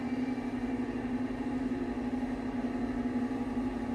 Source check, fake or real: fake